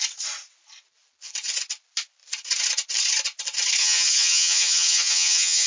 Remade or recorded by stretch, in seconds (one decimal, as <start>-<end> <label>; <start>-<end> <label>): 0.0-3.8 recorded; 3.8-5.7 remade